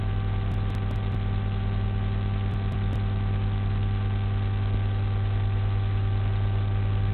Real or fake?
real